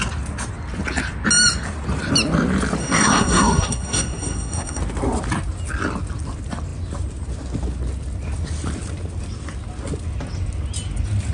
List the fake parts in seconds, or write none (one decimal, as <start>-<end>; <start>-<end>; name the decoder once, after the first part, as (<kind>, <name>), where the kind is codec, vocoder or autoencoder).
2.8-4.8 (codec, SNAC)

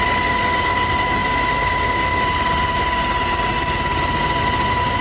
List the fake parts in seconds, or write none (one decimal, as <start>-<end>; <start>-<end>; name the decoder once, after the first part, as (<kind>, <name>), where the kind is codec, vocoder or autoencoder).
none

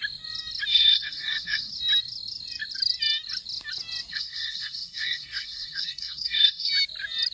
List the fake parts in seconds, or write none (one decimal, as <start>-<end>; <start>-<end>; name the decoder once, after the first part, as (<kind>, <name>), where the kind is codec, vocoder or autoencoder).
0.7-1.7 (codec, SNAC); 4.1-6.7

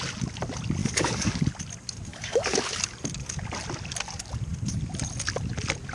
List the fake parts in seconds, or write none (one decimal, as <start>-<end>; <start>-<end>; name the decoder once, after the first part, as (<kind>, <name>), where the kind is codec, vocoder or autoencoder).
0.8-1.4 (codec, DAC); 2.1-2.8

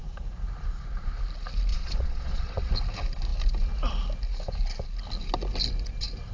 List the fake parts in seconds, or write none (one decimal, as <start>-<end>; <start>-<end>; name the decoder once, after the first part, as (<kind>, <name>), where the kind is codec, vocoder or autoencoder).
1.7-2.7 (vocoder, Vocos)

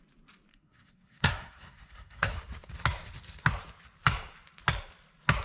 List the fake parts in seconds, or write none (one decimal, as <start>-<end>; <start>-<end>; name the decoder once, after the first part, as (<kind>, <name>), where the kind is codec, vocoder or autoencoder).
0.5-2.3 (codec, SNAC)

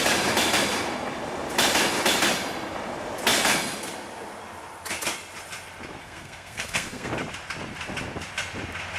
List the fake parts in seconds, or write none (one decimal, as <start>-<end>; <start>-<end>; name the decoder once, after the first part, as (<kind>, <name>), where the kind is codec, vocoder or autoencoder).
6.0-7.1 (codec, SNAC)

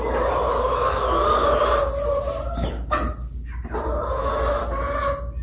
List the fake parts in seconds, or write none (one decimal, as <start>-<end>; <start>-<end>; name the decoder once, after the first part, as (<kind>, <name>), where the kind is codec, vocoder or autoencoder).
none